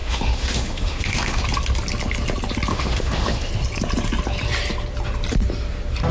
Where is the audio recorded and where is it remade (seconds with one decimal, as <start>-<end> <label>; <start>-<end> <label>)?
0.0-1.4 remade; 1.4-2.7 recorded; 2.7-3.5 remade; 3.5-6.1 recorded